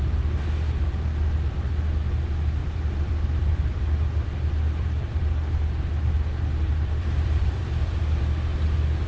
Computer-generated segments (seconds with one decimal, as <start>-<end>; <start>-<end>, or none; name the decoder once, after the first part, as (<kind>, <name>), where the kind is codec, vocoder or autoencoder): 2.6-5.3 (vocoder, BigVGAN v2); 6.6-8.2